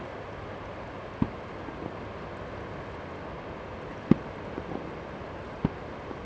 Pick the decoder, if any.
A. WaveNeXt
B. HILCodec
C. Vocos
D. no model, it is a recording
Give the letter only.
D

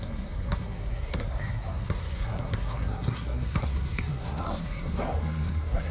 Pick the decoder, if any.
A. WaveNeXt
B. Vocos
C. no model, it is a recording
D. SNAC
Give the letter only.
D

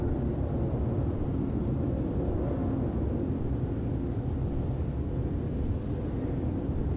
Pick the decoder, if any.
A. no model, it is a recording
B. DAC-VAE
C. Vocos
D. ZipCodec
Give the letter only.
A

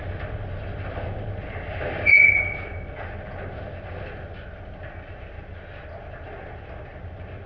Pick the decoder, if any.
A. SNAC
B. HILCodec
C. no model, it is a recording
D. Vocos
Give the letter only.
C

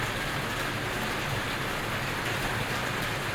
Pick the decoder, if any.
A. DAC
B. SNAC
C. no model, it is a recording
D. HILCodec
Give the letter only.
C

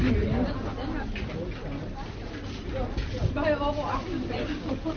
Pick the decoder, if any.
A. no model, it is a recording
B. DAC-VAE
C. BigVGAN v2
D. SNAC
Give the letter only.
A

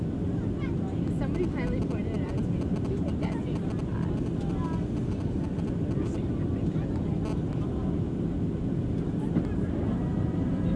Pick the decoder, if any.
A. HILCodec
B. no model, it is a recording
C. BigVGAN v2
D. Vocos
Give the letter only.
B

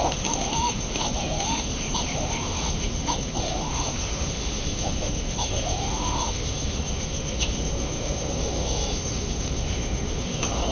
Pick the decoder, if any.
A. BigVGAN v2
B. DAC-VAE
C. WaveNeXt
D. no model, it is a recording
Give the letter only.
B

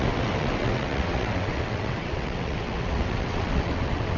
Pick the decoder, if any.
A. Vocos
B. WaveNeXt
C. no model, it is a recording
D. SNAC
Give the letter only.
B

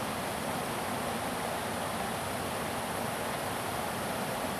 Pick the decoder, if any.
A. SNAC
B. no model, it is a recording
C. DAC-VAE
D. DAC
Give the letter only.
B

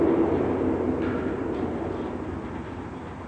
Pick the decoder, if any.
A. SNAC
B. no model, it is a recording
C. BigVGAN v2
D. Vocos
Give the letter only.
B